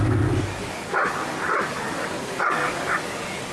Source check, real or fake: fake